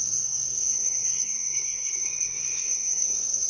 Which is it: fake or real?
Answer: fake